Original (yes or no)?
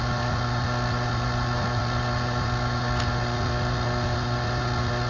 yes